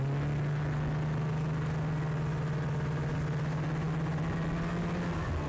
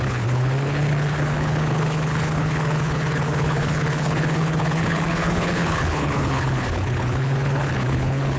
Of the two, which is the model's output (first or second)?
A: second